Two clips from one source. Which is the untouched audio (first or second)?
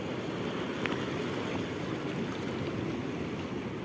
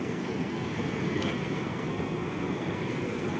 first